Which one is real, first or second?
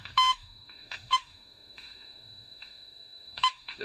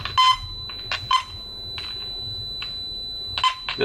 second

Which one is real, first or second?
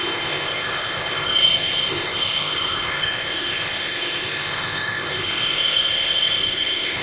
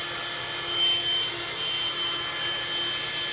second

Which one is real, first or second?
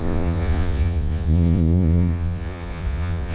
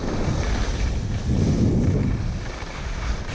second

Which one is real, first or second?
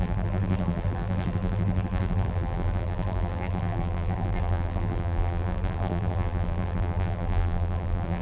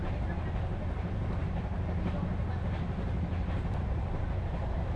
second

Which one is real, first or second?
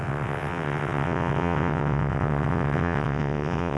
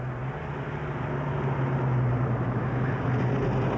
second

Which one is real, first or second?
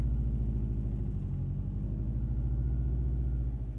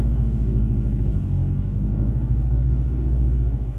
first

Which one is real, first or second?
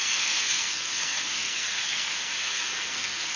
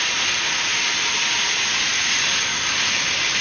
second